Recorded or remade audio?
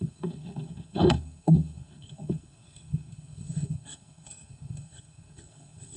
remade